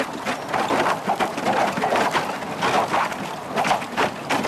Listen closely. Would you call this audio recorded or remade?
recorded